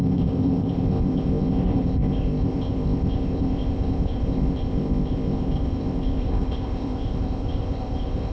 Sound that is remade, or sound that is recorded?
remade